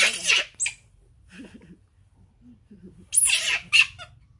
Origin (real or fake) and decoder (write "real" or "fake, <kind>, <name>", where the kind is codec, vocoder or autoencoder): real